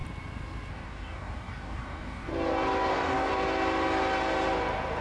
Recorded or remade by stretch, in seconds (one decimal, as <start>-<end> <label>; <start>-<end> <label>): 0.0-0.7 recorded; 0.7-2.3 remade; 2.3-2.9 recorded; 2.9-3.3 remade; 3.3-5.0 recorded